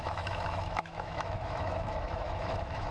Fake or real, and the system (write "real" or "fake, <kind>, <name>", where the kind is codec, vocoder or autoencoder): fake, autoencoder, DAC-VAE